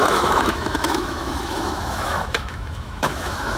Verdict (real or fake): fake